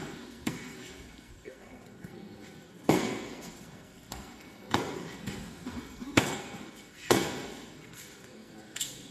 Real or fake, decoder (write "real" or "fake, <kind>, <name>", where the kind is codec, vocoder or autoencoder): fake, codec, SNAC